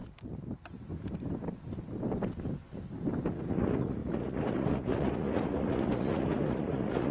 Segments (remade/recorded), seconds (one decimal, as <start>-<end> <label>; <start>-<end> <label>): 0.0-3.5 recorded; 3.5-7.1 remade